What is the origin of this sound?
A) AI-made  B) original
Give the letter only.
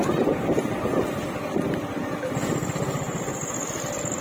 B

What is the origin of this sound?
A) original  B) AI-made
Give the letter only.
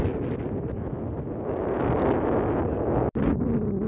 A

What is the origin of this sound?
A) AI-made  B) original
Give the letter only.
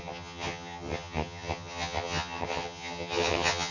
A